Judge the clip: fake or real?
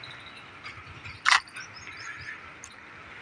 real